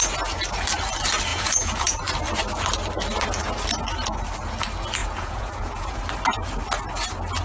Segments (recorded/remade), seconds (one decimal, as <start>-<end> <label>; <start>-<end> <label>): 0.0-1.3 recorded; 1.3-2.0 remade; 2.0-5.0 recorded; 5.0-6.0 remade; 6.0-7.4 recorded